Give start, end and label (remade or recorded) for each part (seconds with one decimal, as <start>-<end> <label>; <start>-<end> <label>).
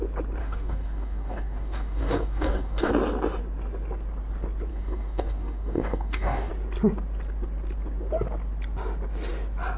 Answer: 0.0-0.4 recorded; 0.4-2.9 remade; 2.9-4.7 recorded; 4.7-6.5 remade; 6.5-9.8 recorded